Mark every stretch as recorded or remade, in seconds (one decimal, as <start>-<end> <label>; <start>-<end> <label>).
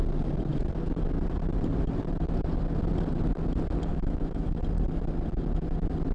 0.0-3.9 recorded; 3.9-4.6 remade; 4.6-6.1 recorded